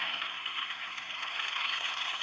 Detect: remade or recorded remade